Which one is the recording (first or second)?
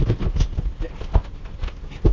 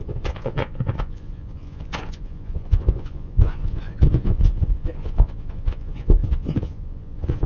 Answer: first